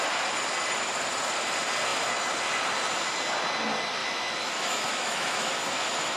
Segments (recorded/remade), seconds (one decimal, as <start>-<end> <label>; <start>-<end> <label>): 0.0-4.0 recorded; 4.0-5.5 remade; 5.5-6.2 recorded